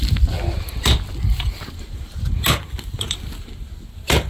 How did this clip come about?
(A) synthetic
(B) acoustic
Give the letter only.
B